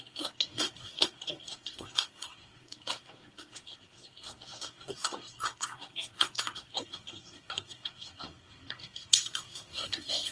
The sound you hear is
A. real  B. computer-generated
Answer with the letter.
B